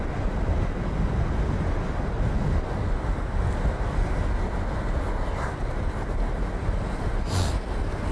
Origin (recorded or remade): recorded